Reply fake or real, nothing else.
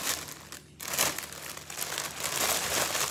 real